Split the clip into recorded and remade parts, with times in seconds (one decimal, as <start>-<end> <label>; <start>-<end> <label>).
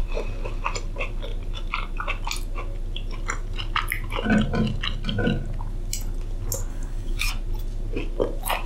0.0-6.7 recorded; 6.7-7.3 remade; 7.3-8.7 recorded